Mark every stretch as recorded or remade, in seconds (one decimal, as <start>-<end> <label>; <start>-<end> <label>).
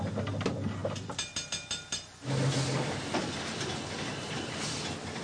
0.0-5.2 recorded